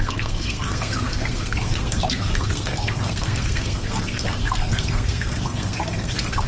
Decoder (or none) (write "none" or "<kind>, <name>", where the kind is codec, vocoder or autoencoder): codec, SNAC